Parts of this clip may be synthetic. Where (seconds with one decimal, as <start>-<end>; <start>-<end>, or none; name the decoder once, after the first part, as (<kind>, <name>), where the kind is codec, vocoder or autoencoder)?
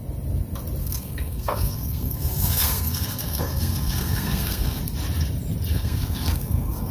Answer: 0.8-4.8 (codec, SNAC); 5.7-6.9